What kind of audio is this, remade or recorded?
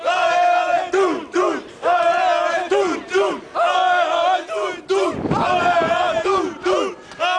recorded